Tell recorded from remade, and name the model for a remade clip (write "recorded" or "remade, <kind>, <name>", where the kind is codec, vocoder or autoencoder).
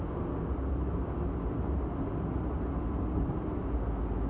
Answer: recorded